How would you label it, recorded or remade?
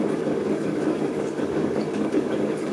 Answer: remade